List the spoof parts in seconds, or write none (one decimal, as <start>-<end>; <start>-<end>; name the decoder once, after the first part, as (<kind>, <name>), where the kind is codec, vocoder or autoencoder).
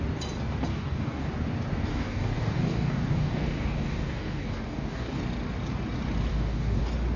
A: 0.7-1.3 (codec, DAC); 1.9-5.2; 6.3-6.8